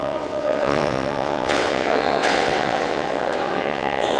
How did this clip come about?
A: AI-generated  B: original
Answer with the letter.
A